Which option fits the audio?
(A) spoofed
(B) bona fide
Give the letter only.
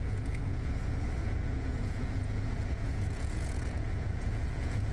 A